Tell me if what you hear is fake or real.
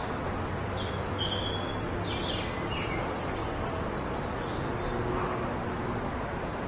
real